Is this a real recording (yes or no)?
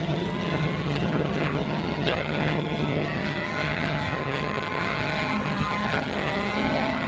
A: no